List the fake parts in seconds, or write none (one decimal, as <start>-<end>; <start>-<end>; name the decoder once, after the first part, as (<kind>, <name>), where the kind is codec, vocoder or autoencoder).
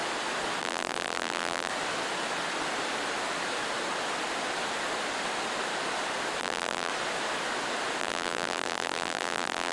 0.6-1.7 (vocoder, BigVGAN v2); 6.4-6.9; 8.0-9.7